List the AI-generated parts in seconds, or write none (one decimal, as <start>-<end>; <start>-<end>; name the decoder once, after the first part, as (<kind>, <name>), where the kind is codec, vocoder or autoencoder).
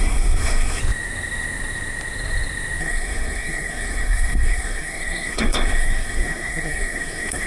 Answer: 0.0-0.8 (codec, SNAC); 2.8-7.5